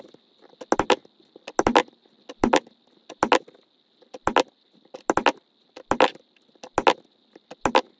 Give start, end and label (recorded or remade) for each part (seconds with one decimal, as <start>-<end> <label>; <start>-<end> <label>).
0.0-8.0 recorded

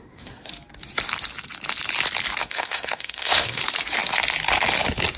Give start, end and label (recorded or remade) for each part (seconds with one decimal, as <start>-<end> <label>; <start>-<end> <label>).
0.0-0.5 remade; 0.5-2.4 recorded; 2.4-3.6 remade; 3.6-5.2 recorded